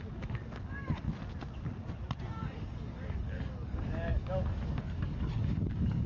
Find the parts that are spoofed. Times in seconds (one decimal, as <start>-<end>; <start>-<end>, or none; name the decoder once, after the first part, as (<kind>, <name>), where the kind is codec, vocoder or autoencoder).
0.0-1.1 (codec, DAC); 2.4-6.1